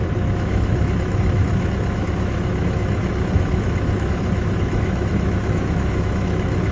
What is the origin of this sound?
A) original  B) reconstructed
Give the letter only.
B